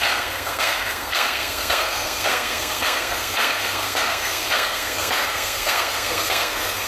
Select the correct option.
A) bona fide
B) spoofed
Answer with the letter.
B